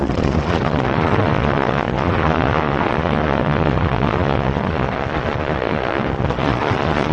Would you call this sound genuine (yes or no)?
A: no